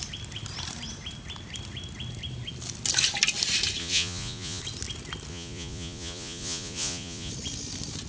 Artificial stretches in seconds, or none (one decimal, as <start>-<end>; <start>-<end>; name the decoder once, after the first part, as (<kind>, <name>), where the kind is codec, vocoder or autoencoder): 3.8-4.6 (vocoder, Vocos); 5.3-7.3